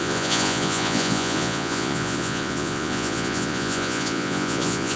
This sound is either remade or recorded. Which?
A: remade